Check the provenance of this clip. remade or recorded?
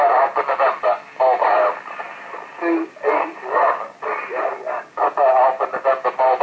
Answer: recorded